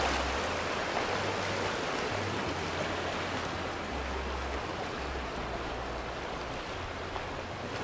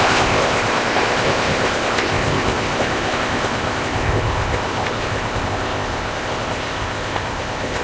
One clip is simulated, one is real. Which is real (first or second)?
first